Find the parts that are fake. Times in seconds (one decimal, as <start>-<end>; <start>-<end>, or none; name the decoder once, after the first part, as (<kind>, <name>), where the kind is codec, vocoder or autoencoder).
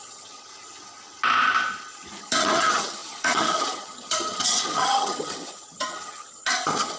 0.0-0.5 (vocoder, HiFi-GAN); 2.2-7.0